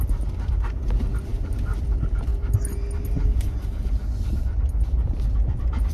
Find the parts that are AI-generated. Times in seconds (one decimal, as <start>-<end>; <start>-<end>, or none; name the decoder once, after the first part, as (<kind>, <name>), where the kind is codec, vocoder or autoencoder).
0.0-2.3 (vocoder, BigVGAN v2); 4.4-5.9